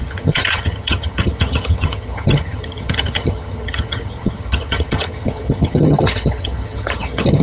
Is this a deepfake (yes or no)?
yes